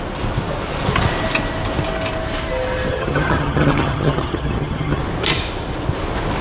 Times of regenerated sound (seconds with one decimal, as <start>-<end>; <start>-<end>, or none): 2.9-5.0